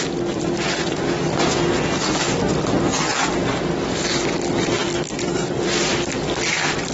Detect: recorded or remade recorded